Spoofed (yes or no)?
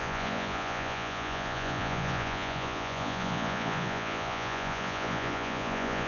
yes